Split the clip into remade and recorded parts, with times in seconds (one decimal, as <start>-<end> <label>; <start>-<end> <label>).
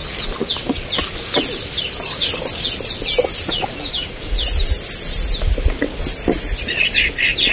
0.0-7.5 recorded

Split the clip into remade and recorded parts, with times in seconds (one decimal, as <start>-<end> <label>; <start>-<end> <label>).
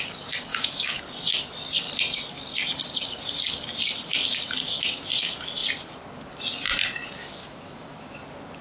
0.0-0.5 recorded; 0.5-1.0 remade; 1.0-7.4 recorded; 7.4-8.2 remade; 8.2-8.6 recorded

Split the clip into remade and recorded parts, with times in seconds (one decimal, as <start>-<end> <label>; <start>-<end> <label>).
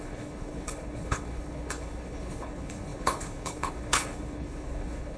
0.0-5.2 remade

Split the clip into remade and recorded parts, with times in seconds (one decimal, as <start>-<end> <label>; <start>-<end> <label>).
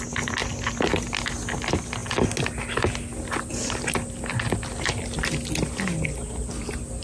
0.0-7.0 recorded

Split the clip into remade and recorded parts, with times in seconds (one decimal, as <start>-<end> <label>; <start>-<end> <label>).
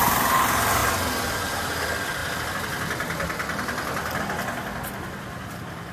0.0-5.9 recorded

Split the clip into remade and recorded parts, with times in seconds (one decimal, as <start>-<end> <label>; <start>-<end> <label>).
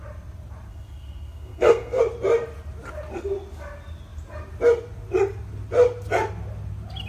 0.0-0.7 recorded; 0.7-2.0 remade; 2.0-7.1 recorded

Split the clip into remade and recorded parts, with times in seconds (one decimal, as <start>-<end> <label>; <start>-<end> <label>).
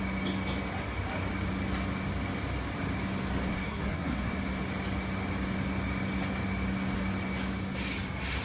0.0-3.5 recorded; 3.5-4.3 remade; 4.3-8.4 recorded